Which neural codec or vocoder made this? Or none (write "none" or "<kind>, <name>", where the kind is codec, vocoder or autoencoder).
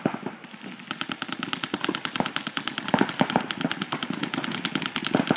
none